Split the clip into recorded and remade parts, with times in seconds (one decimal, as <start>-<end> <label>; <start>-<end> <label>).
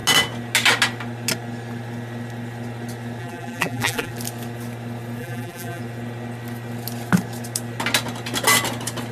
0.0-3.2 recorded; 3.2-4.1 remade; 4.1-5.2 recorded; 5.2-5.8 remade; 5.8-9.1 recorded